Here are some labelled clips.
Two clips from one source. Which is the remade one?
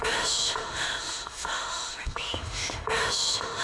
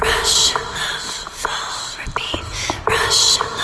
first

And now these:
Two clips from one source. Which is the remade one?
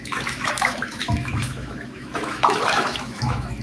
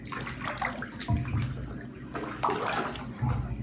first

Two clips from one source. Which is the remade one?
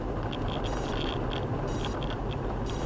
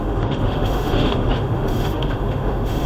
second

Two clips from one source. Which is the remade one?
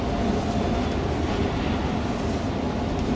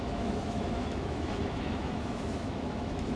second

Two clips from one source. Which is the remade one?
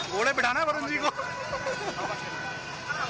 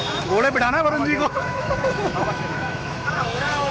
second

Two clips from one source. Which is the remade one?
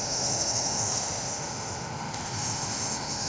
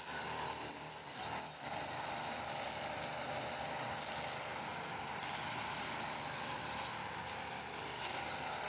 first